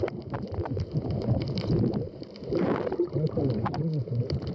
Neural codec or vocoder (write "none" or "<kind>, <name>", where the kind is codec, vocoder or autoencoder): vocoder, BigVGAN v2